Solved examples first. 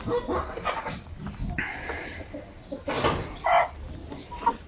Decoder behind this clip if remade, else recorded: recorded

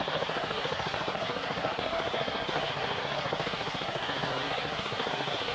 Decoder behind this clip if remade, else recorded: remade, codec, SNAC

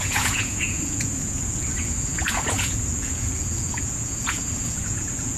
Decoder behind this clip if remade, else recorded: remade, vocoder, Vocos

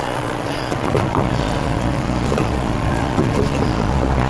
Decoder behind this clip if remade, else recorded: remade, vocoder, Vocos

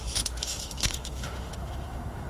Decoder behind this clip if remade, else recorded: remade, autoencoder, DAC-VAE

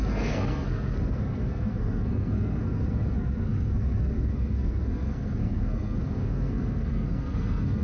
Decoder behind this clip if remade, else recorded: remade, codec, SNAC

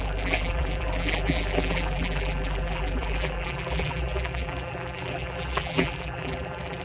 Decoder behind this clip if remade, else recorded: remade, vocoder, BigVGAN v2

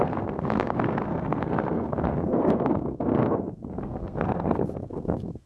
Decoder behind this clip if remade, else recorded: remade, codec, SNAC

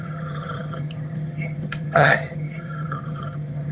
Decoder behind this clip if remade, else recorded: remade, vocoder, HiFi-GAN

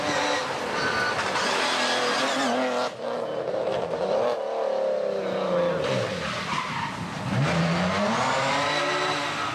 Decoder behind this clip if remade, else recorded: recorded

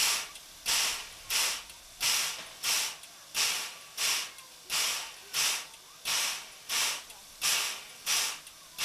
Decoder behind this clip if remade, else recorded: recorded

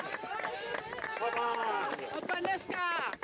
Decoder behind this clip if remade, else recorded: recorded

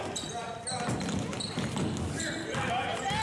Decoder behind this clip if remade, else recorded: recorded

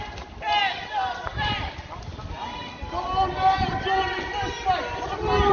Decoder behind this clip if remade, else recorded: recorded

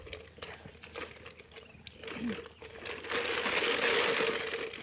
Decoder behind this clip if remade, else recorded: recorded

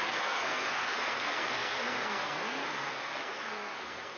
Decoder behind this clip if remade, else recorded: remade, codec, SNAC